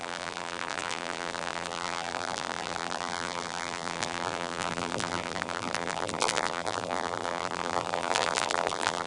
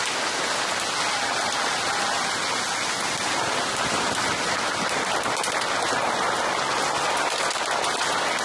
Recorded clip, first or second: second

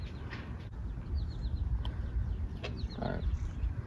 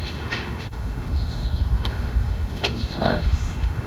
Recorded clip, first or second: first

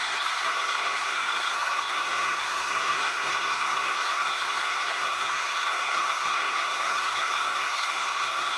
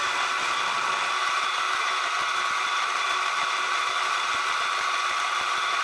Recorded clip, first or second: second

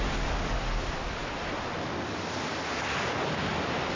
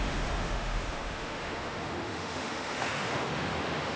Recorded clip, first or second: first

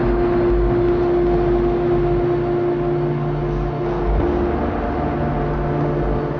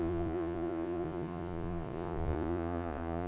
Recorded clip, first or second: first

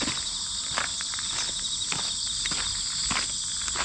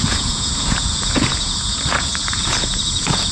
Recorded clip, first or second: first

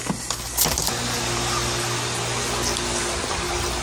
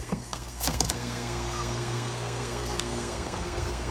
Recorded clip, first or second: first